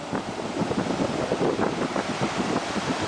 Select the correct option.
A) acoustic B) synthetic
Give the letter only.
A